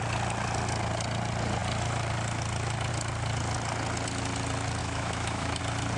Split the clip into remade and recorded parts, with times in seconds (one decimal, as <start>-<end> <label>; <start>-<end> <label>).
0.0-4.8 recorded; 4.8-5.6 remade; 5.6-6.0 recorded